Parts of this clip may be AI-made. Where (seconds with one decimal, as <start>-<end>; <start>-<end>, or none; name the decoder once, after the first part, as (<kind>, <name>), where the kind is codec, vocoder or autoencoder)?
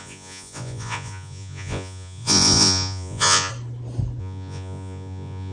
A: 0.0-3.5 (vocoder, Vocos); 4.2-5.5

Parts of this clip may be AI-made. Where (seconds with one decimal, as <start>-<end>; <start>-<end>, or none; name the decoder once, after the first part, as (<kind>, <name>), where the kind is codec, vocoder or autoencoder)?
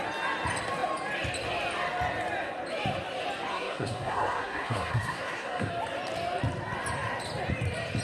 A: 3.5-5.7 (codec, SNAC)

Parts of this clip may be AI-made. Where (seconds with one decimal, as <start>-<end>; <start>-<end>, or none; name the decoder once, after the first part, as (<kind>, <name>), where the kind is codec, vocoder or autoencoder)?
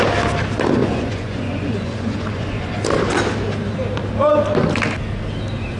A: 0.8-2.7 (vocoder, Vocos)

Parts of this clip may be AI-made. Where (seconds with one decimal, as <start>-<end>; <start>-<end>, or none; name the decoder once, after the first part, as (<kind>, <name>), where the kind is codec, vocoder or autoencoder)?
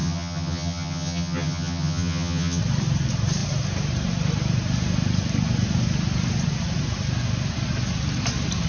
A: 0.0-2.6 (vocoder, HiFi-GAN)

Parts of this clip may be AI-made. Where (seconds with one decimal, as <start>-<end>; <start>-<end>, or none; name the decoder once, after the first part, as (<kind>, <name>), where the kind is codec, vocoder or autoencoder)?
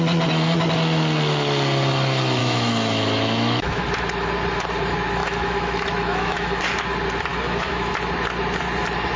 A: 2.4-3.9 (autoencoder, DAC-VAE); 5.2-6.6; 7.3-7.9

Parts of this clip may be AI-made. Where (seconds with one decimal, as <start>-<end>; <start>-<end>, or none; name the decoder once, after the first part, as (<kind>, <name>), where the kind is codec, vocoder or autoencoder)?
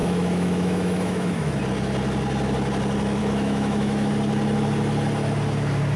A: 0.0-1.6 (autoencoder, DAC-VAE); 3.2-4.1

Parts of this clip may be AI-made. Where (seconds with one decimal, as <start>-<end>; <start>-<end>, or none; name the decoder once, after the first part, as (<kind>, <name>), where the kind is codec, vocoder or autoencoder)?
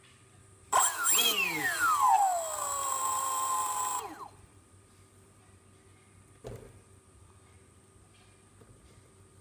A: 0.4-2.1 (vocoder, BigVGAN v2); 2.8-5.4